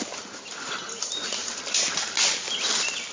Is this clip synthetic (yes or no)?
no